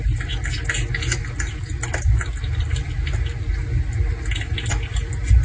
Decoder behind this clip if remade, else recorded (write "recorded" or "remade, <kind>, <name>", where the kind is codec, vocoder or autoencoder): recorded